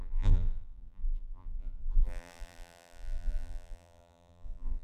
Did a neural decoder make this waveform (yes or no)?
yes